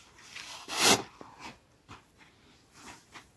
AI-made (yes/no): no